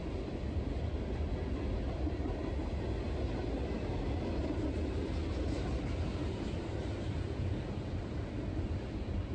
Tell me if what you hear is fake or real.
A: real